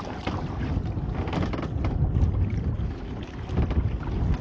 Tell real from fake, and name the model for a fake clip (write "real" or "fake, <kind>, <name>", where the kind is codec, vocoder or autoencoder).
real